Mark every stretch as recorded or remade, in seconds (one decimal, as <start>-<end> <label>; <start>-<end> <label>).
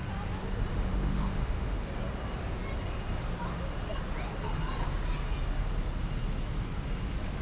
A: 0.0-0.7 recorded; 0.7-1.9 remade; 1.9-7.4 recorded